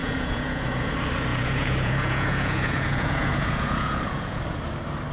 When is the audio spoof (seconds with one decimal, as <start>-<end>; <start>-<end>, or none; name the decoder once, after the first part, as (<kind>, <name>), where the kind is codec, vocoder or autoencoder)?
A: 0.0-0.9 (vocoder, Vocos); 1.3-4.4